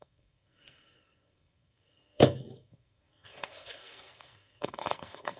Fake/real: fake